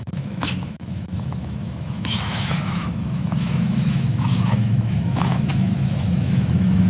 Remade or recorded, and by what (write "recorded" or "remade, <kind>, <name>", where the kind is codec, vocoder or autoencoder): remade, autoencoder, DAC-VAE